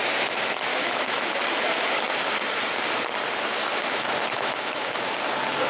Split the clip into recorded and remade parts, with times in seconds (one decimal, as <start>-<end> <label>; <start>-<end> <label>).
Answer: 0.0-0.7 recorded; 0.7-1.2 remade; 1.2-3.6 recorded; 3.6-5.0 remade; 5.0-5.7 recorded